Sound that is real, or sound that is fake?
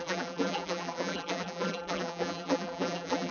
fake